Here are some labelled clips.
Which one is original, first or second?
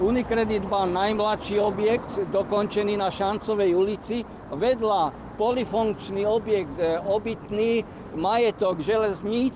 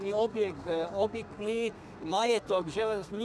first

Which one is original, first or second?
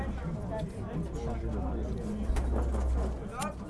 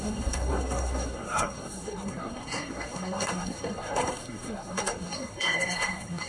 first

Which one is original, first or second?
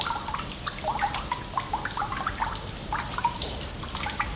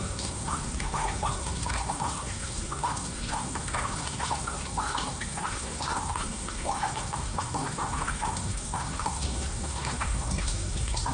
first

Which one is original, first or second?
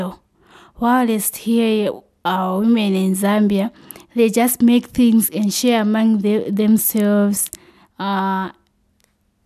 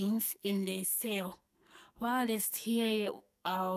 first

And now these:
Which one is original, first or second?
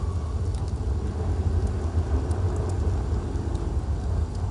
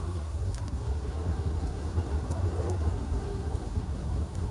first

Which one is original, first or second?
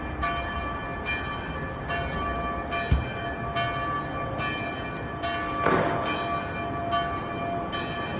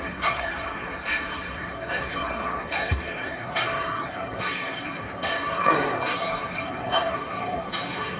first